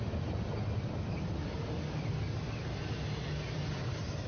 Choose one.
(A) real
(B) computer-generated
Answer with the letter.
A